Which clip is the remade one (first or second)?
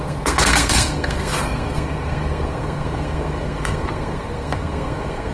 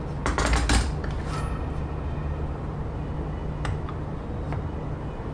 first